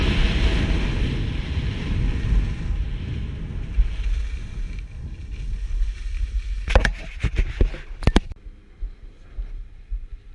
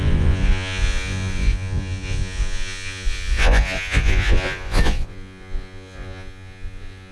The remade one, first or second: second